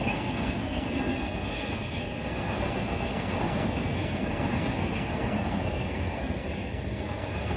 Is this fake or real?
fake